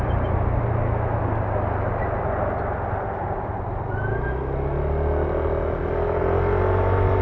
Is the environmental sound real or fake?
real